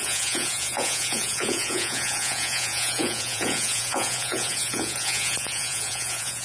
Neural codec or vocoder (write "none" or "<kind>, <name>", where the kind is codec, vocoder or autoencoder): vocoder, Vocos